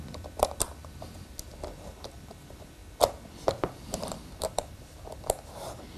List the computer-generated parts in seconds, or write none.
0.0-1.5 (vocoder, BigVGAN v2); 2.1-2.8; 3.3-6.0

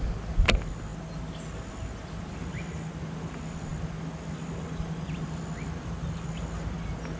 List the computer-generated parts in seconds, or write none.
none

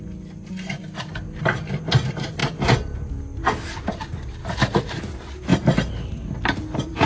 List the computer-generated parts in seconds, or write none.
4.4-5.0 (vocoder, BigVGAN v2); 5.5-6.6